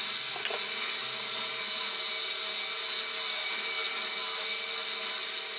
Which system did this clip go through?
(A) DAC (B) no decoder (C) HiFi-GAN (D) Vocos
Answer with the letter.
B